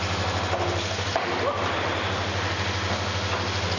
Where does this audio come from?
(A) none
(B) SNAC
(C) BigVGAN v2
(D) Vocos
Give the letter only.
A